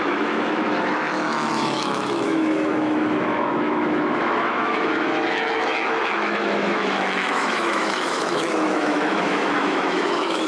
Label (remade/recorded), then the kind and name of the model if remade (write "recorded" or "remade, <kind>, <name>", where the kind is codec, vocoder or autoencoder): remade, autoencoder, DAC-VAE